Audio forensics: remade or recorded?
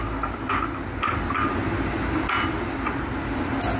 recorded